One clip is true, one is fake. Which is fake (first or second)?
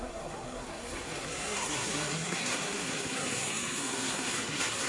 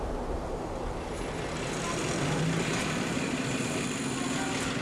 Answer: first